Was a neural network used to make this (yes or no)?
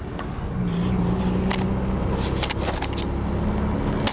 no